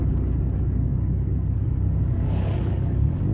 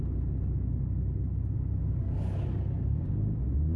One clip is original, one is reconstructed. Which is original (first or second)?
second